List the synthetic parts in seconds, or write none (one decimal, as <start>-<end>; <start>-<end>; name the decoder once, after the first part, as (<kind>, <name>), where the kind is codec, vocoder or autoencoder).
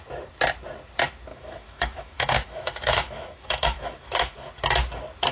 1.3-4.5 (autoencoder, DAC-VAE)